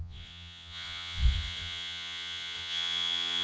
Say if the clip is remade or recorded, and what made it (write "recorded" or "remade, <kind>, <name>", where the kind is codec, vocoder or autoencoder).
remade, vocoder, Vocos